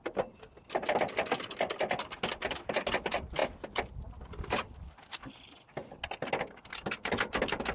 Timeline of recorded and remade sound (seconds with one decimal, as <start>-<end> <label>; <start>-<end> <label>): 0.0-7.7 recorded